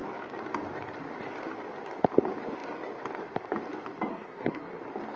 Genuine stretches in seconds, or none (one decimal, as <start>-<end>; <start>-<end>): 0.0-4.1; 4.8-5.2